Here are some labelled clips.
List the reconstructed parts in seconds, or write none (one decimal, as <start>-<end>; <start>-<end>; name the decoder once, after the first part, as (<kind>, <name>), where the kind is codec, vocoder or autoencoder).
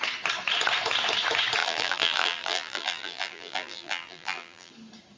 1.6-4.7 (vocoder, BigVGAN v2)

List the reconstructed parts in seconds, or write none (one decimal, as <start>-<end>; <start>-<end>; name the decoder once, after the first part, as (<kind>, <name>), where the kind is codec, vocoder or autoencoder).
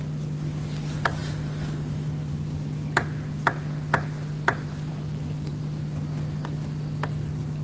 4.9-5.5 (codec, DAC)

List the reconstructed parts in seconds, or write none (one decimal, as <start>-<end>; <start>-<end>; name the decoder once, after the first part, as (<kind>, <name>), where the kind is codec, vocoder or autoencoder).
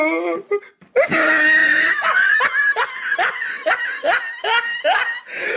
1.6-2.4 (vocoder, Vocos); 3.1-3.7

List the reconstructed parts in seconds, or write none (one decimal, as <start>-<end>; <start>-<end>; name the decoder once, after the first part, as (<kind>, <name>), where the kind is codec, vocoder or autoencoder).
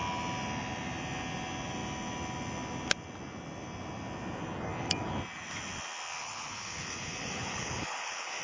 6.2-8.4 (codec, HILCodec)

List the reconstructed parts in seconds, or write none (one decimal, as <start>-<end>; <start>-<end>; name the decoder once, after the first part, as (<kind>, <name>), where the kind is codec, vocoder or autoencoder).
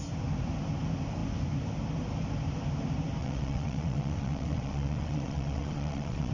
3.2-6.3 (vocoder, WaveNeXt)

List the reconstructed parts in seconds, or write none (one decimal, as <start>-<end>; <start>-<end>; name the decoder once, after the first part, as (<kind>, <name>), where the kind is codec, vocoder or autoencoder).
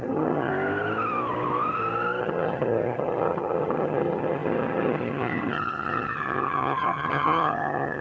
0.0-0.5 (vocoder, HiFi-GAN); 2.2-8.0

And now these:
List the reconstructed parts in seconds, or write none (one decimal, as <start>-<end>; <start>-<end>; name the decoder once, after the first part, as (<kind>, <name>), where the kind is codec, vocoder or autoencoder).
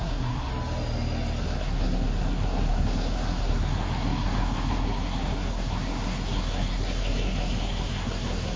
0.0-0.5 (codec, SNAC); 1.4-8.6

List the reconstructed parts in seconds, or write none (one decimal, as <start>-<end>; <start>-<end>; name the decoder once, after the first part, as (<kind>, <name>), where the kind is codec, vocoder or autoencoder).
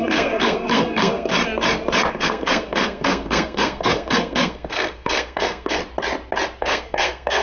0.0-1.3 (codec, SNAC); 2.1-5.8; 6.6-7.4